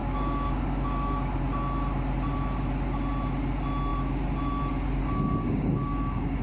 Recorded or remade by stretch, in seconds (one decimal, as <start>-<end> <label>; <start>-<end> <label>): 0.0-1.4 remade; 1.4-5.0 recorded; 5.0-6.4 remade